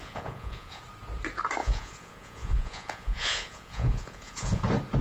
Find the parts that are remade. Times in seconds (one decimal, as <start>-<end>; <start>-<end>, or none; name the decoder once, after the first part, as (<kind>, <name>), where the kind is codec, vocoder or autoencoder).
0.0-0.8 (vocoder, Vocos); 1.6-4.6

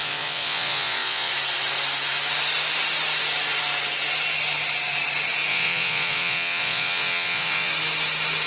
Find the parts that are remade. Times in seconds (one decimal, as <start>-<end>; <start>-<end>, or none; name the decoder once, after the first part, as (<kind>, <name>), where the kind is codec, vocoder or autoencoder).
0.0-1.3 (vocoder, Vocos); 5.5-7.7

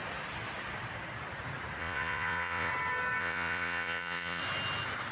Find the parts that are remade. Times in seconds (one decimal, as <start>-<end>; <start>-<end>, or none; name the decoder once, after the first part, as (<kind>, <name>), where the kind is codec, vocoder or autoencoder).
1.8-2.7 (vocoder, Vocos); 3.2-4.4

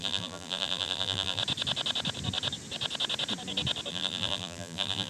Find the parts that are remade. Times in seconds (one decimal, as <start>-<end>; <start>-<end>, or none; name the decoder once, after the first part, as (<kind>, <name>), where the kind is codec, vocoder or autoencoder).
0.0-1.4 (vocoder, BigVGAN v2); 3.9-5.1

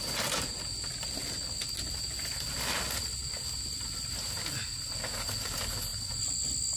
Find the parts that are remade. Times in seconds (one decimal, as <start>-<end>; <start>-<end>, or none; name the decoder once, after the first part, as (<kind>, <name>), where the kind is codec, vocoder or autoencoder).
none